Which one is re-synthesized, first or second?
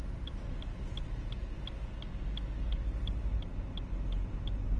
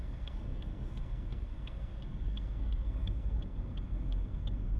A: second